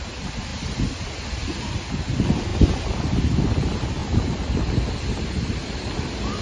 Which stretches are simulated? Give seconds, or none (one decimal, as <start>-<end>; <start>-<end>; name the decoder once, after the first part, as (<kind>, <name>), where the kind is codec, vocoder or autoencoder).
4.0-4.6 (vocoder, BigVGAN v2)